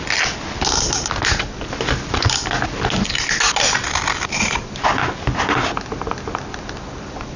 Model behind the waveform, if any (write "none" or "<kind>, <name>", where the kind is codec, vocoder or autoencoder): none